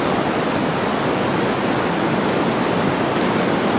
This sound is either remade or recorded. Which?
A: recorded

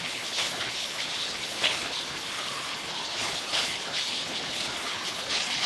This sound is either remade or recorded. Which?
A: remade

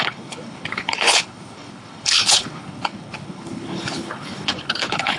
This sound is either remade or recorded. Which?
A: remade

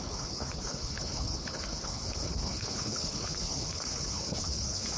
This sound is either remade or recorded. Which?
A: remade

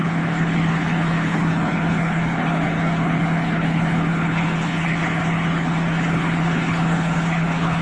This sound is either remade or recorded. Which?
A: remade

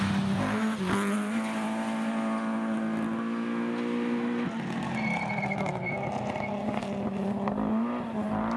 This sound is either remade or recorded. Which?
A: recorded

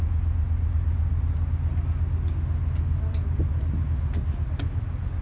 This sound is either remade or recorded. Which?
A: recorded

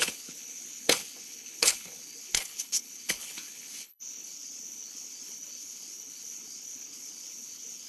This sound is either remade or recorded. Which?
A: remade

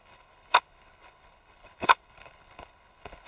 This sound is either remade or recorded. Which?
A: remade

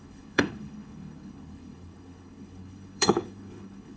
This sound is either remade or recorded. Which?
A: remade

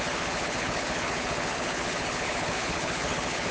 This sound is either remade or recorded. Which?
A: remade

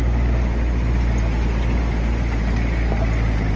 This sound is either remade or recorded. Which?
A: recorded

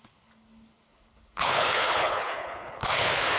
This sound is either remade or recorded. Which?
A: remade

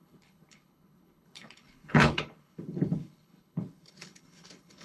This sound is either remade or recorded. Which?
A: remade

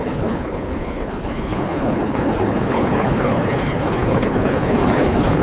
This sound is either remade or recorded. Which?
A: remade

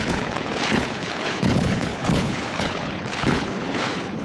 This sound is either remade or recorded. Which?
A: remade